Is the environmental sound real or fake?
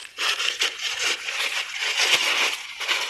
fake